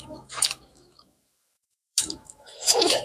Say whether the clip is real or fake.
fake